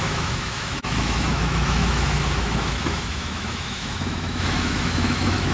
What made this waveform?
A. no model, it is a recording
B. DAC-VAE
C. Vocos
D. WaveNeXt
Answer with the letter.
B